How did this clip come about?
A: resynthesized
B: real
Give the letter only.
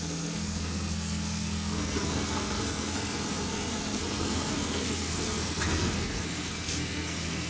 A